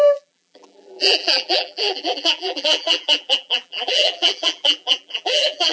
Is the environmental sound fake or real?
fake